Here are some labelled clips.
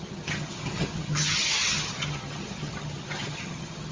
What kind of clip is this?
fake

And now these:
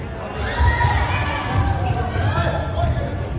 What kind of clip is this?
real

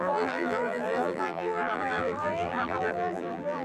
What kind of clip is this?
fake